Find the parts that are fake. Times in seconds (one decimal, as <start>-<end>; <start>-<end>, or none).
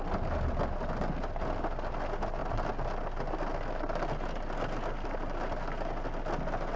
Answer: none